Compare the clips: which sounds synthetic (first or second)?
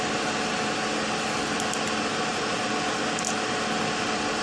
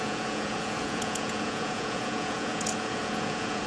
second